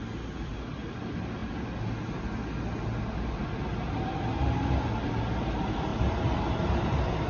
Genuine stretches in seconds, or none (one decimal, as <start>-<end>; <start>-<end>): 0.0-7.3